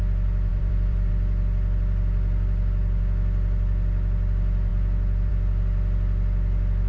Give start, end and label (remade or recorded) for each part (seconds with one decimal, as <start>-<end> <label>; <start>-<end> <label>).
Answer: 0.0-0.5 recorded; 0.5-1.1 remade; 1.1-6.9 recorded